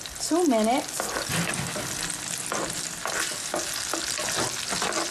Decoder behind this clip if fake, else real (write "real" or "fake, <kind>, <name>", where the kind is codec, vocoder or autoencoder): real